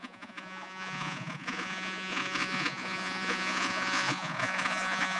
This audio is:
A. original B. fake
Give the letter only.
B